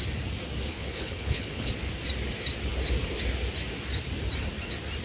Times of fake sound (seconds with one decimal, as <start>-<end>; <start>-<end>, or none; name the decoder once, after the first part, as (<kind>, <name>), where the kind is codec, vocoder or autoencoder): 0.7-1.7 (codec, HILCodec)